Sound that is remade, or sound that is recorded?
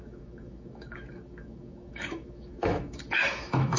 remade